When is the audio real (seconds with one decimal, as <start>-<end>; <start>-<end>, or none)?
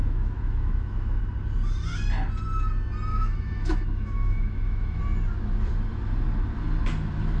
1.2-3.1; 5.0-7.4